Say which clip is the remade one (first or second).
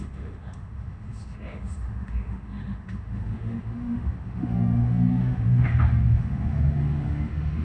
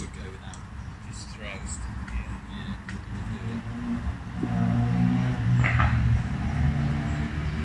first